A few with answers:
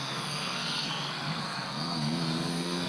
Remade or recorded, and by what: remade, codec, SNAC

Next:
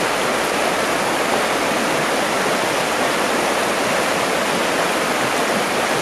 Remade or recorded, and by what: recorded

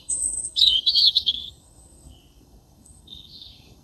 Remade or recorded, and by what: remade, codec, SNAC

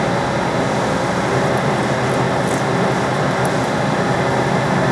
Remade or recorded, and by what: recorded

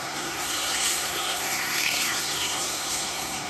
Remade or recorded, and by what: remade, codec, SNAC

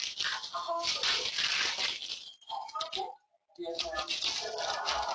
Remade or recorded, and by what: recorded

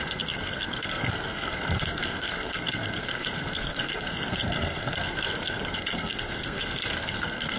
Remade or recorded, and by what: remade, codec, SNAC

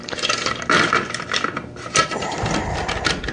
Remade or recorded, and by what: recorded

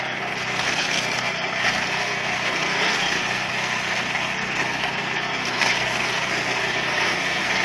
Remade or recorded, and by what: remade, codec, SNAC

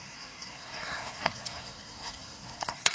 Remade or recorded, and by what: remade, codec, SNAC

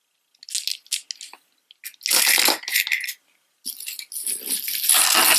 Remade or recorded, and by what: recorded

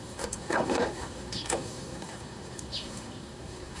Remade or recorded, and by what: remade, codec, SNAC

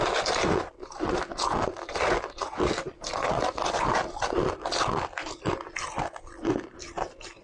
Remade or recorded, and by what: recorded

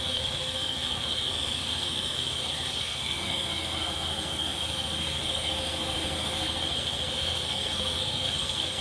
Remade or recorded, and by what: remade, codec, SNAC